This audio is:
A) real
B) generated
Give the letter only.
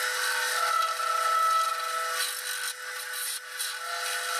A